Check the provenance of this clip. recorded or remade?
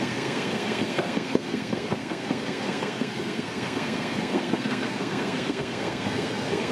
remade